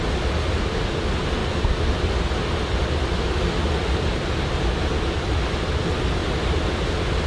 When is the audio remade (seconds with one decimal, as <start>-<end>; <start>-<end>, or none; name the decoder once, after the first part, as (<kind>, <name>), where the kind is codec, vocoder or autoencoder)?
none